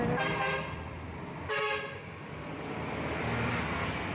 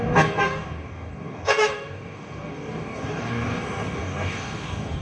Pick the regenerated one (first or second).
second